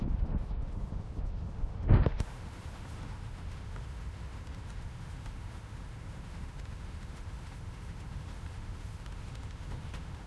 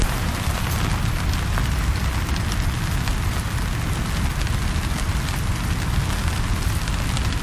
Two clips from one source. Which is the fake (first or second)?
first